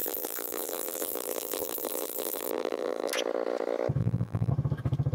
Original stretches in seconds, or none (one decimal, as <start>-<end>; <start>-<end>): 3.1-4.0; 4.5-5.1